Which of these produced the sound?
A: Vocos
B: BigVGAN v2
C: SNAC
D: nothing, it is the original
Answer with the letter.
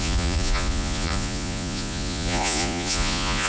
A